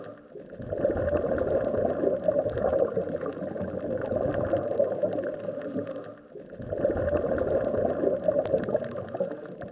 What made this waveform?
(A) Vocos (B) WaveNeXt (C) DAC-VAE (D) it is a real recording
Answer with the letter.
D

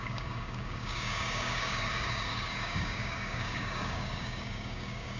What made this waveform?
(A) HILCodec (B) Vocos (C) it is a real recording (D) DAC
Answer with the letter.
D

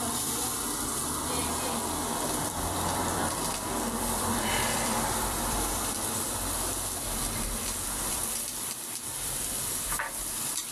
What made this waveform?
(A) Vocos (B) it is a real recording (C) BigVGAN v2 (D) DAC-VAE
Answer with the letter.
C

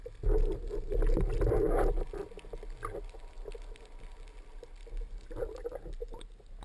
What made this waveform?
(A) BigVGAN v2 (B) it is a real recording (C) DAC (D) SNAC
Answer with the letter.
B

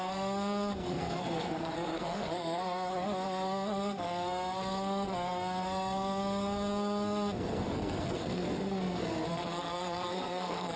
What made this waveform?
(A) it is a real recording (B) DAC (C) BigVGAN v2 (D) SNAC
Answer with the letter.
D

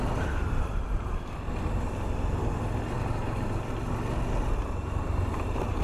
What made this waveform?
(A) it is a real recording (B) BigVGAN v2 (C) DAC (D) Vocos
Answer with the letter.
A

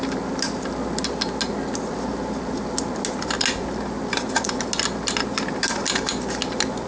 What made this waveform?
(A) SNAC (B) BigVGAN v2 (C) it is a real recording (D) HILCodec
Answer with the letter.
C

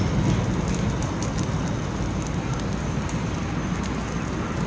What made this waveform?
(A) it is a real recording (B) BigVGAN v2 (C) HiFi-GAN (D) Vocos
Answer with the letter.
A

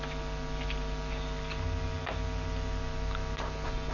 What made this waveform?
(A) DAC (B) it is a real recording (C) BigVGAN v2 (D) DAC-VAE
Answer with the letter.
B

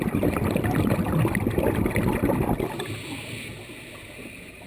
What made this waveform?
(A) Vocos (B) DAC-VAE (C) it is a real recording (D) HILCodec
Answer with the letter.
C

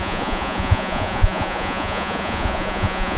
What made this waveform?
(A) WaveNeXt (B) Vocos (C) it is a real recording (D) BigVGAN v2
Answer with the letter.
B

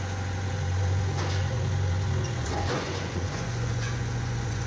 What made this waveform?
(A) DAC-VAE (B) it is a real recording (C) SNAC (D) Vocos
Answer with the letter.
D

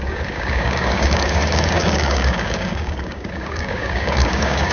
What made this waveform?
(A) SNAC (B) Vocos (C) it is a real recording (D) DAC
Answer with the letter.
D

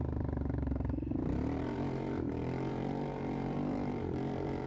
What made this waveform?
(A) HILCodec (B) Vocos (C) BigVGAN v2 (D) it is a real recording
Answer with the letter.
C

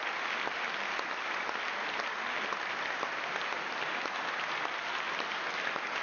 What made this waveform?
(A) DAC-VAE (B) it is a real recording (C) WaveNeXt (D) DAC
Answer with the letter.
B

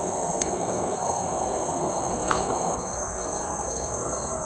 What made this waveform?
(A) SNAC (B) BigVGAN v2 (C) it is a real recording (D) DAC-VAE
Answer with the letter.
A